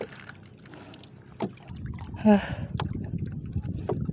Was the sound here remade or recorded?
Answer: recorded